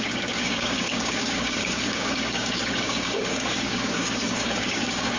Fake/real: fake